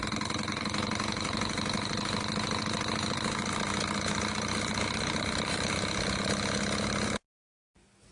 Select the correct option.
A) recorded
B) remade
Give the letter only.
A